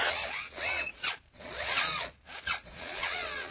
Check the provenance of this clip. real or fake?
fake